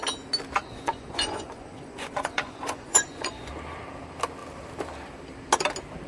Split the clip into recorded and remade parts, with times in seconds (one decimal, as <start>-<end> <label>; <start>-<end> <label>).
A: 0.0-0.7 recorded; 0.7-3.5 remade; 3.5-6.1 recorded